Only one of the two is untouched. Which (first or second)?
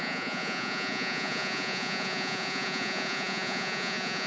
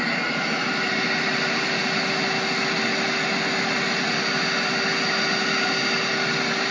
second